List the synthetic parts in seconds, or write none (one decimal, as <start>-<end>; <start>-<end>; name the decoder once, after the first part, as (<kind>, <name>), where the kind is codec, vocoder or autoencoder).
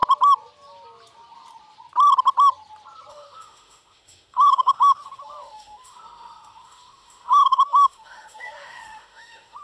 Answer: 3.1-9.6 (autoencoder, DAC-VAE)